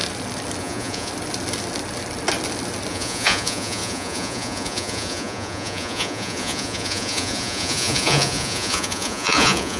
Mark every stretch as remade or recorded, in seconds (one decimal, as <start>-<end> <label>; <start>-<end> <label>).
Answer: 0.0-0.6 recorded; 0.6-1.1 remade; 1.1-2.9 recorded; 2.9-9.8 remade